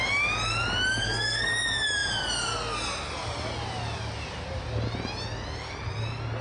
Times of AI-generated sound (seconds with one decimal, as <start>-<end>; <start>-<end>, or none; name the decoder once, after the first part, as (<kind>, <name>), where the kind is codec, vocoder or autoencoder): 1.0-1.5 (codec, SNAC)